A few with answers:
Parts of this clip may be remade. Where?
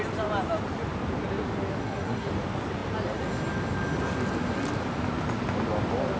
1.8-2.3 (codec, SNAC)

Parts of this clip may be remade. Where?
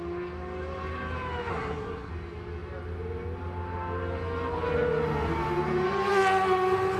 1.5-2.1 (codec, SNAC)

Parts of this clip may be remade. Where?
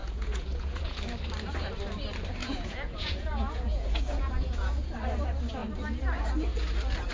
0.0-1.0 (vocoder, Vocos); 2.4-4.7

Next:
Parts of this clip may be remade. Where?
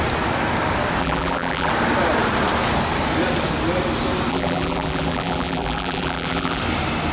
1.0-1.7 (vocoder, BigVGAN v2); 4.3-6.6